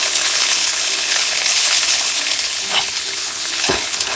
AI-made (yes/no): yes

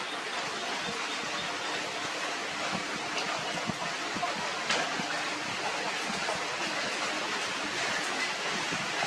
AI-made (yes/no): no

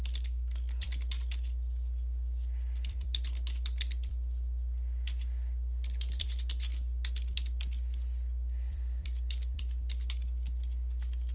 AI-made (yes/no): yes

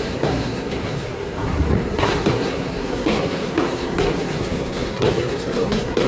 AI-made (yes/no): yes